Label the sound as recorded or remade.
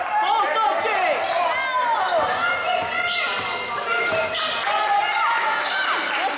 recorded